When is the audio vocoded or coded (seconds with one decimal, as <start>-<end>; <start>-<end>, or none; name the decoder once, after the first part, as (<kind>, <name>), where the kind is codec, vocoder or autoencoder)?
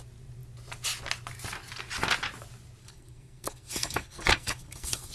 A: 2.8-5.1 (codec, SNAC)